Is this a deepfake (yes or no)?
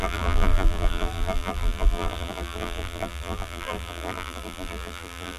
yes